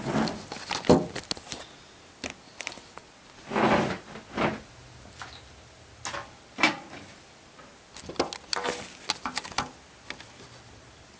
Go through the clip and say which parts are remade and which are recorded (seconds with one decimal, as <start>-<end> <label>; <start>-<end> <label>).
0.0-11.2 recorded